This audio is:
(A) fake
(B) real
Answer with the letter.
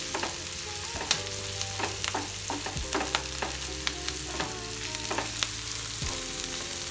B